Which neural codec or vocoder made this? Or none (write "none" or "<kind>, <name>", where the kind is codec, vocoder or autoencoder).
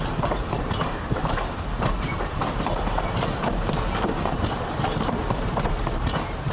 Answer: vocoder, BigVGAN v2